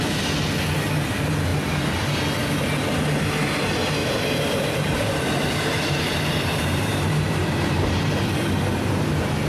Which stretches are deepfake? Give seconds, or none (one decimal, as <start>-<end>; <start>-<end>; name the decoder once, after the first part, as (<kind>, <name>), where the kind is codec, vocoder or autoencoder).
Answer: 4.0-8.3 (vocoder, BigVGAN v2)